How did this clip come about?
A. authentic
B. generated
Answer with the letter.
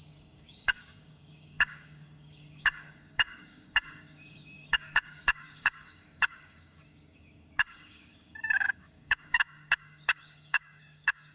B